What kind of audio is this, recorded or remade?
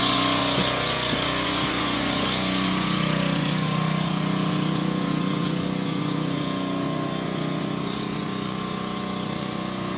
remade